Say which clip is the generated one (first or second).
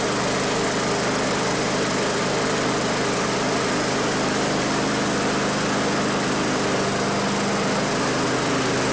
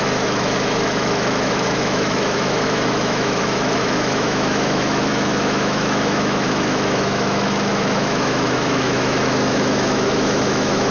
second